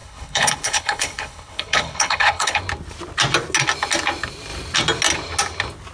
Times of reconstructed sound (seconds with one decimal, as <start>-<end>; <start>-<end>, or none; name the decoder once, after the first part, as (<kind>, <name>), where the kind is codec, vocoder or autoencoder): 0.0-2.6 (codec, HILCodec)